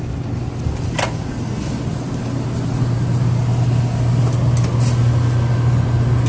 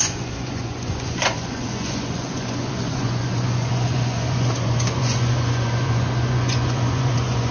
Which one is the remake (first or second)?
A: second